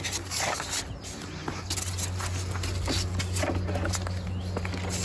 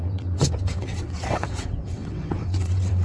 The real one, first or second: first